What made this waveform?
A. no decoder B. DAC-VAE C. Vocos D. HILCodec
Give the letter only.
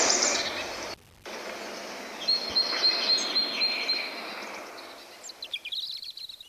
A